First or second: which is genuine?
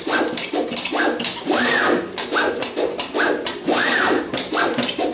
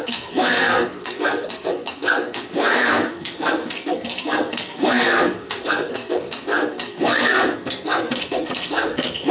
first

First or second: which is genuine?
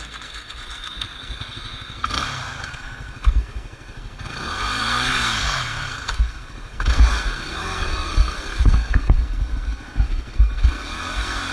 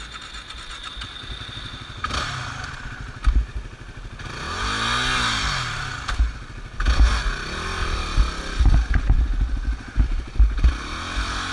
second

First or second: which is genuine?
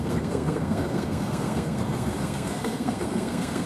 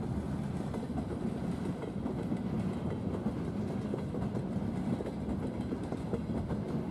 second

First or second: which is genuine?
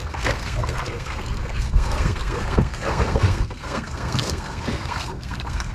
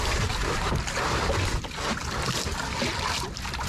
second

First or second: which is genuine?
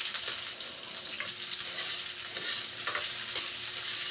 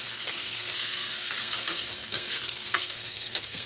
first